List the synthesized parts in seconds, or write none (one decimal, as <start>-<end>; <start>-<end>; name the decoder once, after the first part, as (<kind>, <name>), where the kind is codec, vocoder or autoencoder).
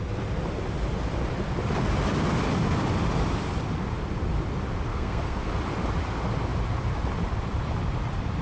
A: 4.9-5.5 (codec, SNAC)